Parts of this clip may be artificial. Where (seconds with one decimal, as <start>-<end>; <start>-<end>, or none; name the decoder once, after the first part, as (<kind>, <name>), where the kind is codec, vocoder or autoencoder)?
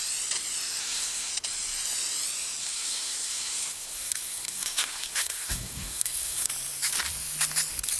0.8-1.3 (codec, SNAC); 2.6-6.5